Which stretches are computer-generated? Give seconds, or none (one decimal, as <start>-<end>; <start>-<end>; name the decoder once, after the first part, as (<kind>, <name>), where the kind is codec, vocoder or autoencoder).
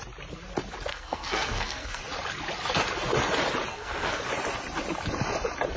0.9-2.0 (codec, SNAC); 3.7-4.2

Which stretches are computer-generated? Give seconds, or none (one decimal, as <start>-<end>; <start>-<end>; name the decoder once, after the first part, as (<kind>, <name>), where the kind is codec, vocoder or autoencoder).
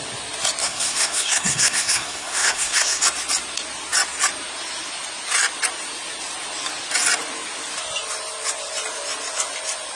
0.6-3.0 (codec, SNAC)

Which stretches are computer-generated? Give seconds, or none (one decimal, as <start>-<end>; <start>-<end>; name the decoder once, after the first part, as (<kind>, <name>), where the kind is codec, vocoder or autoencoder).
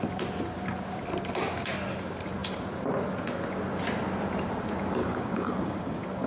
5.0-6.3 (codec, DAC)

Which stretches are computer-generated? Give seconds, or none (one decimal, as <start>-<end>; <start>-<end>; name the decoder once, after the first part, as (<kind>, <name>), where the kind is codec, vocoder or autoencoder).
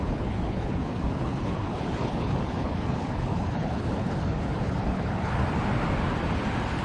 0.0-5.4 (codec, HILCodec)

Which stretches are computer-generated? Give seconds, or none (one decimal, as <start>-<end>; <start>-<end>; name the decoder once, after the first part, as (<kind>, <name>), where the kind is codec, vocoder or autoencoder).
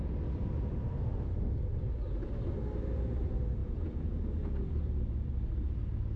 3.6-4.5 (vocoder, Vocos)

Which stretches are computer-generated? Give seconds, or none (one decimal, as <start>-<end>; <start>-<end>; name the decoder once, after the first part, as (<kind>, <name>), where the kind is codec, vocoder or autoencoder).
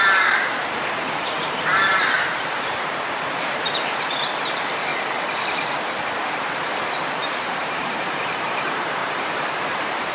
0.0-4.9 (vocoder, BigVGAN v2); 6.3-10.1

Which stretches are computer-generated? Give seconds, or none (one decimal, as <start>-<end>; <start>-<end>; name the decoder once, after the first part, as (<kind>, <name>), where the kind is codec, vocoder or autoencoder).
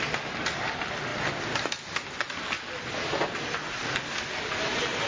none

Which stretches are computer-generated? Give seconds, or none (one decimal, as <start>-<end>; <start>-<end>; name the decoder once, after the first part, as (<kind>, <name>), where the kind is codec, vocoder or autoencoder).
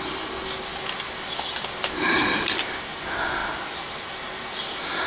none